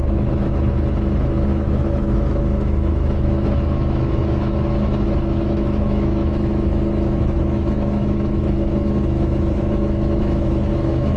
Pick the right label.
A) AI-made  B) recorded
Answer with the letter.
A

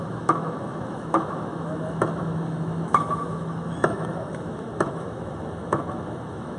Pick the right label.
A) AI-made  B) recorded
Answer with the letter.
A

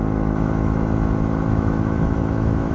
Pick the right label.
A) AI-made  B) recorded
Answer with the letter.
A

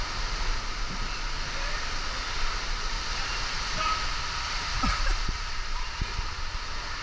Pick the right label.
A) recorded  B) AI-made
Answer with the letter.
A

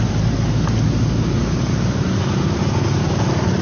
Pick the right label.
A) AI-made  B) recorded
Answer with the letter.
B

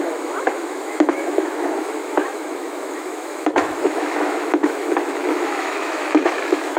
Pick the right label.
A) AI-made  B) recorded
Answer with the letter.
A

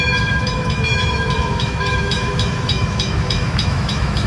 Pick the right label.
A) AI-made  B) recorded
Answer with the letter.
A